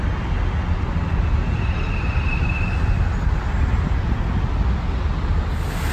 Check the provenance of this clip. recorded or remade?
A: recorded